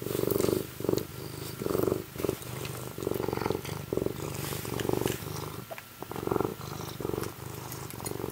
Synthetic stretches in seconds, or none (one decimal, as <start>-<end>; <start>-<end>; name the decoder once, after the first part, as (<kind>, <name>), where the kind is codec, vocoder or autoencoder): 0.0-1.1 (vocoder, BigVGAN v2); 6.0-6.5; 7.0-8.3